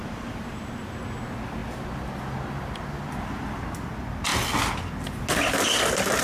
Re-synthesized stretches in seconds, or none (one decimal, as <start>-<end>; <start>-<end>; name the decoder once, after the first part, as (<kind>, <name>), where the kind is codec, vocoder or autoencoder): 0.0-1.0 (vocoder, BigVGAN v2)

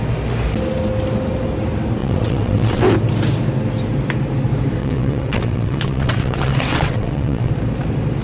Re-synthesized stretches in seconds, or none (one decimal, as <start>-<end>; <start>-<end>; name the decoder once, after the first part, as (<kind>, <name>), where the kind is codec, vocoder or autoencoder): 2.0-2.8 (vocoder, WaveNeXt); 4.8-7.5

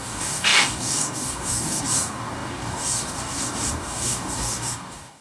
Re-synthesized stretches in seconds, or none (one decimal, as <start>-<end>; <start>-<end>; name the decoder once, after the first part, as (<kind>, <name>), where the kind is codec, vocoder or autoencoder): 0.0-5.2 (codec, DAC)

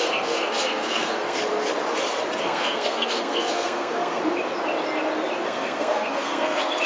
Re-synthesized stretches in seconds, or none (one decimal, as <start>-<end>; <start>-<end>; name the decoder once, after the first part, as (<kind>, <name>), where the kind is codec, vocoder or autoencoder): 0.0-1.4 (codec, SNAC); 2.4-4.2; 5.4-6.9